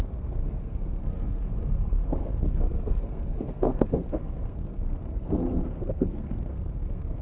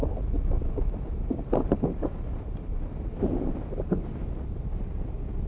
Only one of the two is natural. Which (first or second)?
second